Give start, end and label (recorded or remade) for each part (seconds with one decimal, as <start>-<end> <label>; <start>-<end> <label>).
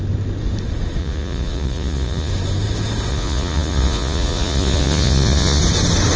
0.0-1.0 recorded; 1.0-2.3 remade; 2.3-3.1 recorded; 3.1-5.6 remade; 5.6-6.2 recorded